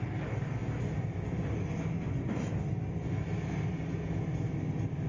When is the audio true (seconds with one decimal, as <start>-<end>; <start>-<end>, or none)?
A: 0.0-5.1